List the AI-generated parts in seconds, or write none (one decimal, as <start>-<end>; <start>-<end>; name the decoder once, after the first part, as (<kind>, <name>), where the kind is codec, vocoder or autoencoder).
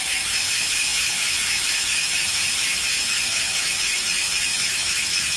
0.0-5.4 (autoencoder, DAC-VAE)